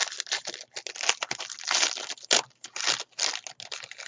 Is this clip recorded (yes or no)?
yes